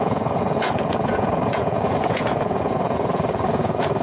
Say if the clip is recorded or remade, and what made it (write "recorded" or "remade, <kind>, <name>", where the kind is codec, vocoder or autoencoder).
remade, vocoder, Vocos